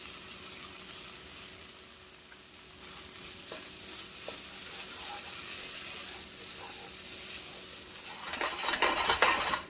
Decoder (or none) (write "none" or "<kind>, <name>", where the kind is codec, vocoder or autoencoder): none